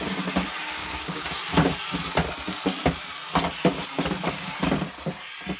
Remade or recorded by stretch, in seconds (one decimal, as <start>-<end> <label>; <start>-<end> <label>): 0.0-0.8 recorded; 0.8-1.4 remade; 1.4-5.6 recorded